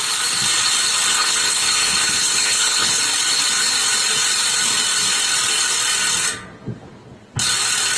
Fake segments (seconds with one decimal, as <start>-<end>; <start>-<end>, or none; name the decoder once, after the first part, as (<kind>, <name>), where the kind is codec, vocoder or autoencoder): 1.1-3.0 (codec, HILCodec)